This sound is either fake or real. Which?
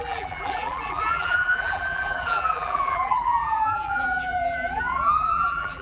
fake